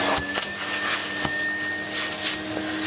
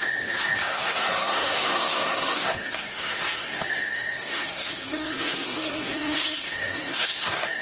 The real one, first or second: first